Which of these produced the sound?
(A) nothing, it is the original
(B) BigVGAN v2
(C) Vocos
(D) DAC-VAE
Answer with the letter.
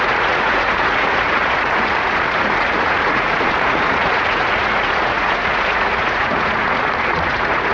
C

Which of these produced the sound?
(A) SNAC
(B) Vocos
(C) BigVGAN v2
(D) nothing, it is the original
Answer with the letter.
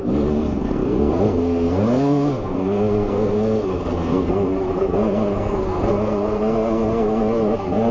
A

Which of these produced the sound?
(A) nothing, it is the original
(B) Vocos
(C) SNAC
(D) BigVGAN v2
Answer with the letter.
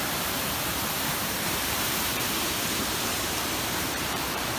D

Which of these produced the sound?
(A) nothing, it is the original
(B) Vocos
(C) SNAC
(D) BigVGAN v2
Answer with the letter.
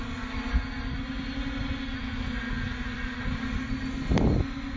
A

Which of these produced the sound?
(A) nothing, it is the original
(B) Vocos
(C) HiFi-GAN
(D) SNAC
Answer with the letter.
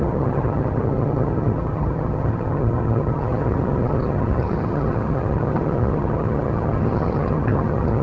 C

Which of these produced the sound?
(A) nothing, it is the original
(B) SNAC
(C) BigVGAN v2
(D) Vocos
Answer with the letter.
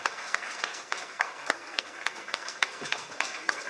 B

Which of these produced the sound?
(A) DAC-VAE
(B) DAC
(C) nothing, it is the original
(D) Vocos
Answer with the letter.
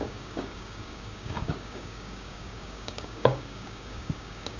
B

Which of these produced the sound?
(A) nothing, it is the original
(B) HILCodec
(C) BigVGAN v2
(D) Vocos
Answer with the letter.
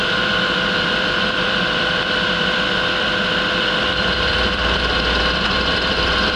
C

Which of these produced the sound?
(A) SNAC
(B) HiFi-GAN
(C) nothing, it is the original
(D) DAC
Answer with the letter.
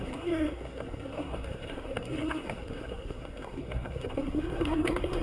A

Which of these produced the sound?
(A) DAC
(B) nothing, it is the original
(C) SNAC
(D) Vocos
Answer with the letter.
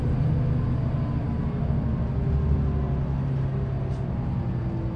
B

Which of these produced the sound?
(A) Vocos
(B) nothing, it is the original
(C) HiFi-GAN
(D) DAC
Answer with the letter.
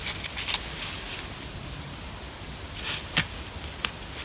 B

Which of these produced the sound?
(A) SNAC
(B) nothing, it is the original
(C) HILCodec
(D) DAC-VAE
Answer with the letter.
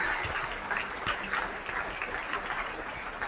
B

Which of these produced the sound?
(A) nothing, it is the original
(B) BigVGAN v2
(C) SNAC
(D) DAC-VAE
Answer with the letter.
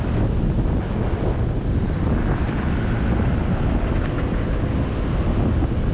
A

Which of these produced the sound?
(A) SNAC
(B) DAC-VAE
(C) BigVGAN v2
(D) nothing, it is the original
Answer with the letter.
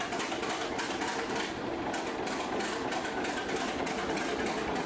D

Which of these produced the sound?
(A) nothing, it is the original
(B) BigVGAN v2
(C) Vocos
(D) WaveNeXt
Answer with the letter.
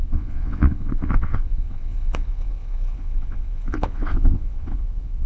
D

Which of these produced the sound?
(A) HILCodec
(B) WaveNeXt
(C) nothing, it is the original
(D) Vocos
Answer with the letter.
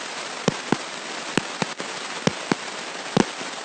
C